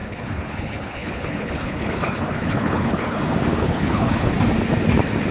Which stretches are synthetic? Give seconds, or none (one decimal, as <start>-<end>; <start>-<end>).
0.0-3.2; 3.6-4.3